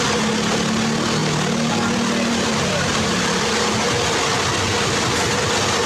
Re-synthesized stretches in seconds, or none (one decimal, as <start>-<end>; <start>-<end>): 1.2-3.7